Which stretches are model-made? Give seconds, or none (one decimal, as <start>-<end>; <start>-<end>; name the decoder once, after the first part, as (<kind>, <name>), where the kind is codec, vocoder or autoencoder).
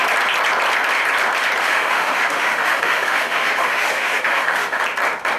1.6-4.8 (autoencoder, DAC-VAE)